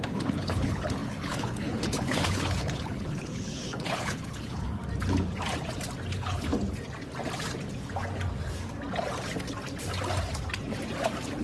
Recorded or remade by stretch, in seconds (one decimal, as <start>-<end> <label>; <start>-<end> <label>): 0.0-4.8 remade; 4.8-6.1 recorded; 6.1-6.5 remade; 6.5-11.4 recorded